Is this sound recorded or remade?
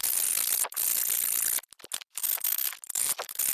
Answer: recorded